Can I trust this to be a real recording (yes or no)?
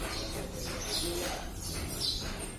no